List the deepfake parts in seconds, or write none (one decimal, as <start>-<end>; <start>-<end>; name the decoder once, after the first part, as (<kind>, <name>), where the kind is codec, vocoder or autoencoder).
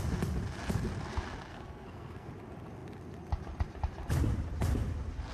1.5-2.3 (codec, SNAC)